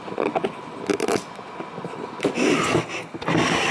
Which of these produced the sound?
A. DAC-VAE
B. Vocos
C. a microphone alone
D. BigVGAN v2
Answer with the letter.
C